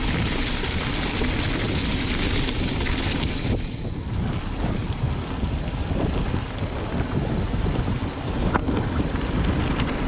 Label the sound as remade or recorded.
recorded